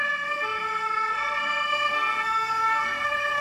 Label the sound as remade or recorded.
remade